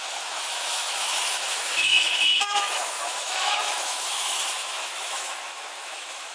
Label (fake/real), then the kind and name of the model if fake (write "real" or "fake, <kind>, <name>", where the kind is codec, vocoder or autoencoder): fake, autoencoder, DAC-VAE